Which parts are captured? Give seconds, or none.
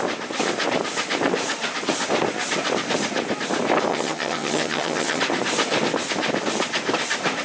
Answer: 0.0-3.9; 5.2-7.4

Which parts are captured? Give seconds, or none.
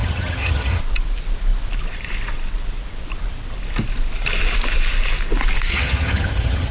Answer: 0.8-5.7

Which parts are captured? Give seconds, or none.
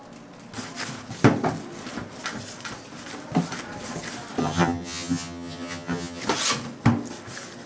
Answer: 0.0-4.4; 6.2-7.7